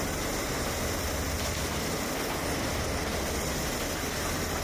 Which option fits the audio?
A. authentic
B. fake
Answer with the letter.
B